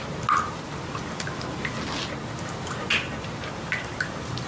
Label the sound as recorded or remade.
recorded